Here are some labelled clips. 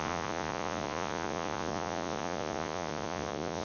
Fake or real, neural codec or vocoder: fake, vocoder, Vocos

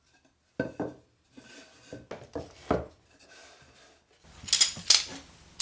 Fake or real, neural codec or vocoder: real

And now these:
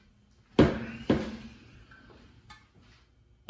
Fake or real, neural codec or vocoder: real